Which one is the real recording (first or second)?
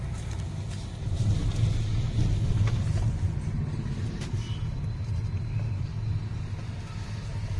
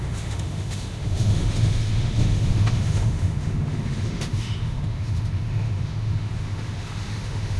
first